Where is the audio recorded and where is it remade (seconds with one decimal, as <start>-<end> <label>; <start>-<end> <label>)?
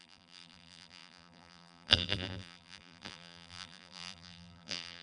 0.0-5.0 remade